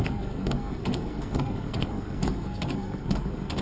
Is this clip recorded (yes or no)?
no